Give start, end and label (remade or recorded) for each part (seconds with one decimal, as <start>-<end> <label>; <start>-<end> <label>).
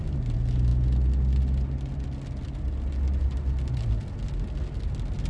0.0-5.3 recorded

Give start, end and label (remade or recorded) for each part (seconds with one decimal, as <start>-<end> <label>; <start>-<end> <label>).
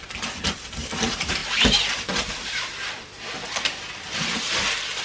0.0-5.0 recorded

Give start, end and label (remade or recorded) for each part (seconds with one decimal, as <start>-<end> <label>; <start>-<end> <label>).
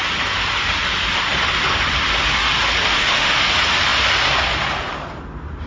0.0-2.9 recorded; 2.9-3.5 remade; 3.5-5.7 recorded